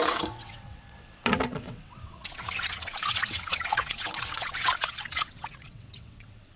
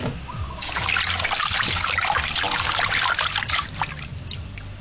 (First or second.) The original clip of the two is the second